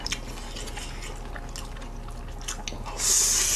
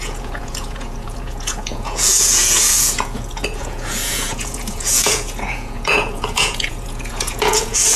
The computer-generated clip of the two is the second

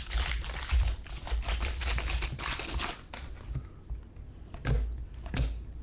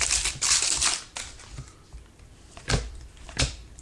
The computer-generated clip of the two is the second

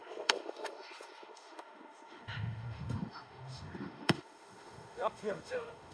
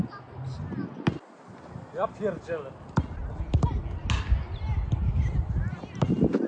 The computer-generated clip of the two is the first